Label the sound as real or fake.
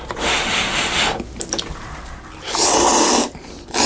real